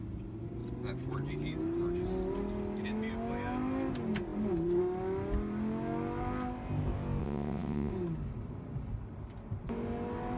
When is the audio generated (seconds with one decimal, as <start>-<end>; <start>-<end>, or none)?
7.2-7.9